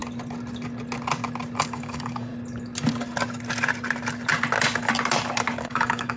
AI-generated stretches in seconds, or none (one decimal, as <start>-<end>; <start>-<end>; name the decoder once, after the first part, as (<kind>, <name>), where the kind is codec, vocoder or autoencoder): 1.6-2.3 (codec, DAC); 5.6-6.2

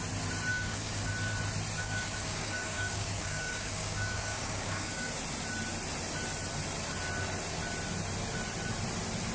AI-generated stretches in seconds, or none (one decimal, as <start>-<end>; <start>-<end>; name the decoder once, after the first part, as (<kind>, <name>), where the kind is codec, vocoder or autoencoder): 0.5-1.1 (codec, DAC); 1.8-5.1

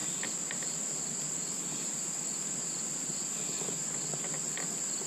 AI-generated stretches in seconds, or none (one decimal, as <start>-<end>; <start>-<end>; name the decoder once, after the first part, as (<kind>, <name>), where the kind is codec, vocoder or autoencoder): none

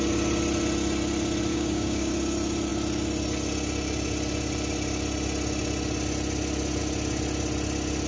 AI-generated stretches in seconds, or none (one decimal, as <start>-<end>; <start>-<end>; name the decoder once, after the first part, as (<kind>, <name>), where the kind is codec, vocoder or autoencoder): 1.5-2.1 (codec, DAC)

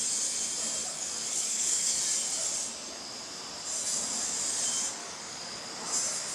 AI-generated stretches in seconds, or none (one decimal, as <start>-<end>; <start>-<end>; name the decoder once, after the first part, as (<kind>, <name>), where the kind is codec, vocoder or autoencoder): 0.8-2.0 (codec, DAC); 5.0-5.7

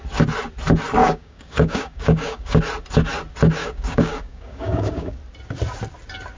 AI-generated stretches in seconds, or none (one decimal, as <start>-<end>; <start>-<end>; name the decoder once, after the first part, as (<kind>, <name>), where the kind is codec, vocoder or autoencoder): 1.0-2.6 (codec, DAC); 3.6-5.2

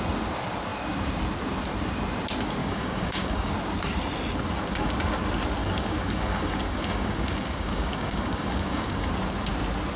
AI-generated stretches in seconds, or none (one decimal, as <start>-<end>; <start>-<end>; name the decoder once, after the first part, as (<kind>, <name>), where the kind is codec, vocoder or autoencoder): 2.6-3.5 (codec, DAC); 5.6-9.1